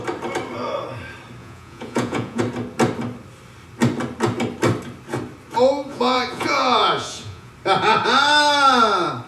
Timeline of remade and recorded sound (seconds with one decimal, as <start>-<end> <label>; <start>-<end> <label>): 0.0-1.4 recorded; 1.4-2.4 remade; 2.4-5.9 recorded; 5.9-7.5 remade; 7.5-9.3 recorded